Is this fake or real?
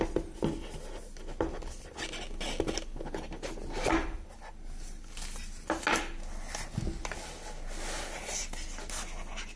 real